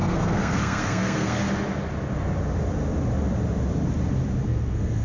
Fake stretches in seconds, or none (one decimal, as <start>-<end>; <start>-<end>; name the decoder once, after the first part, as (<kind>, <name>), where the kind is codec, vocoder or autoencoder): 0.0-1.4 (codec, SNAC); 4.4-5.0